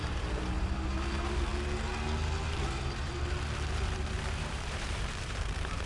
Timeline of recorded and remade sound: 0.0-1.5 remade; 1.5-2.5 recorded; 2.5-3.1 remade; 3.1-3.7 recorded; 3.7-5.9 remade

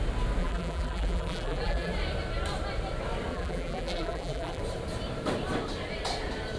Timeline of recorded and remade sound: 0.0-0.4 recorded; 0.4-1.9 remade; 1.9-3.3 recorded; 3.3-4.6 remade; 4.6-6.6 recorded

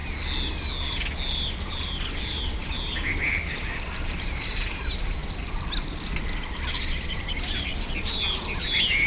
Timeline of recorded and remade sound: 0.0-3.3 recorded; 3.3-5.2 remade; 5.2-7.0 recorded; 7.0-7.7 remade; 7.7-8.6 recorded; 8.6-9.1 remade